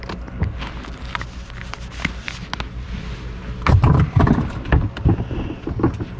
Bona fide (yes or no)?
yes